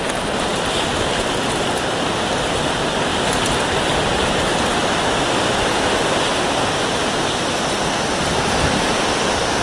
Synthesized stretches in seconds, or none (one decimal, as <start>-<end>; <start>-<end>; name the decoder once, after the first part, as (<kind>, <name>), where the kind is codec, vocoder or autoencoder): none